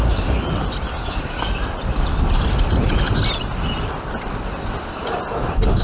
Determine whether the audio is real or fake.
real